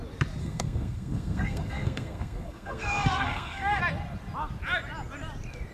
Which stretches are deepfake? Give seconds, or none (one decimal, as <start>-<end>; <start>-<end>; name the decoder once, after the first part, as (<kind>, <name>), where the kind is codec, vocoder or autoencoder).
0.4-3.8 (codec, SNAC)